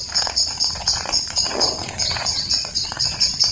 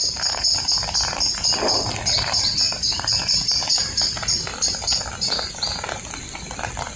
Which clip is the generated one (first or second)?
first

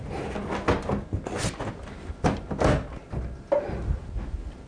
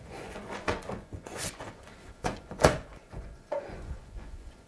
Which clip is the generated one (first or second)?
second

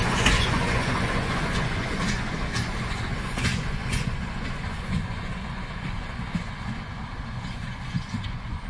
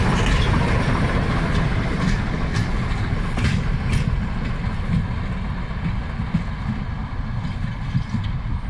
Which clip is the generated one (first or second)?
first